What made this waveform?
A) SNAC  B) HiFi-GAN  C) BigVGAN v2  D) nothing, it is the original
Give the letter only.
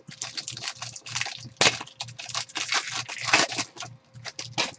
D